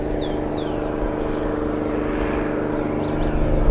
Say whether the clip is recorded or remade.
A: recorded